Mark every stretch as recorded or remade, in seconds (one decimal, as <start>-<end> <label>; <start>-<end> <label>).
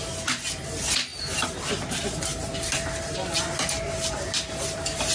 0.0-1.1 recorded; 1.1-1.8 remade; 1.8-2.3 recorded; 2.3-5.1 remade